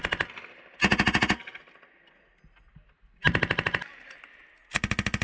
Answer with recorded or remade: recorded